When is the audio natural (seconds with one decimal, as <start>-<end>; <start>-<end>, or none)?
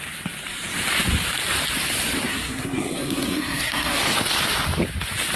0.0-2.3; 4.0-5.4